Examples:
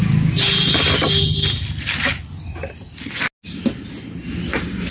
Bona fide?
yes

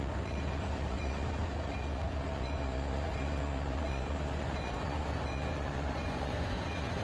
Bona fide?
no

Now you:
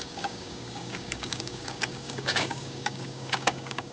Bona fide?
no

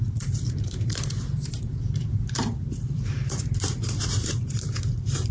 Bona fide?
no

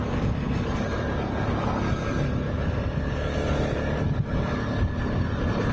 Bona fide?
yes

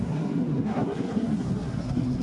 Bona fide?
no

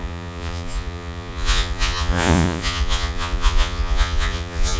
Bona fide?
no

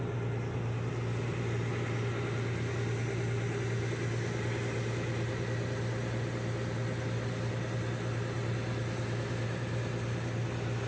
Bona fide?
yes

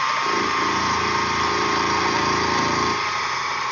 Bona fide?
no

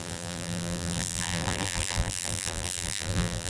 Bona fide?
no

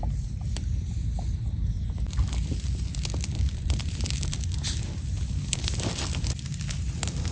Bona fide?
yes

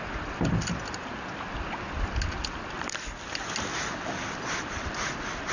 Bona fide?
yes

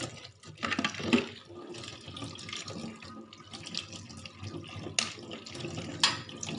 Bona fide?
yes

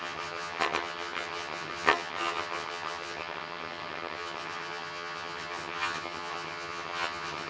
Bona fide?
no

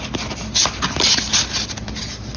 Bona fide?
yes